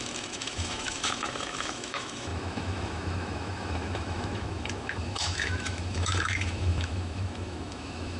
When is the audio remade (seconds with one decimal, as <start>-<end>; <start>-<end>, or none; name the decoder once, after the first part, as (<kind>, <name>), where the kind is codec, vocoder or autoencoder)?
0.0-8.2 (autoencoder, DAC-VAE)